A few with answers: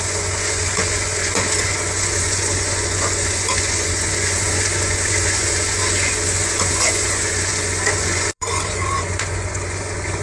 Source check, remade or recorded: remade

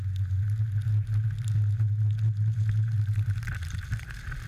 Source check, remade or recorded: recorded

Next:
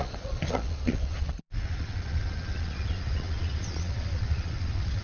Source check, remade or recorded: remade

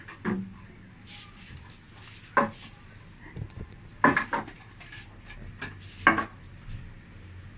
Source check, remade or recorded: recorded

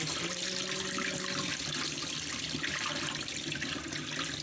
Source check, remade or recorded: recorded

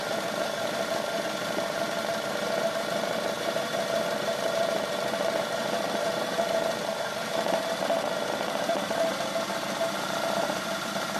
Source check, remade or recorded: remade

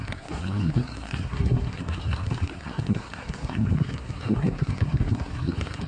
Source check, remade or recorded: remade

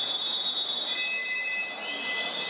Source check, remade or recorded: recorded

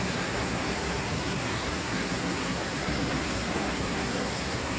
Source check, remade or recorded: remade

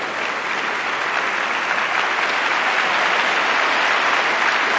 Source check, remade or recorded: recorded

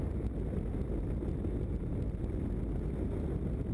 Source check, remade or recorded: recorded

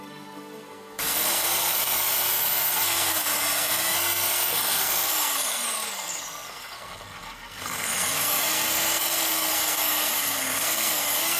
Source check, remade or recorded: remade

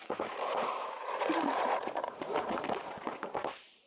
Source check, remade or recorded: remade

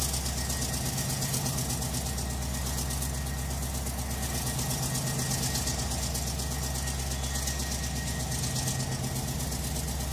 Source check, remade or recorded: recorded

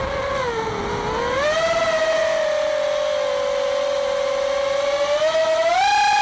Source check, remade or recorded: recorded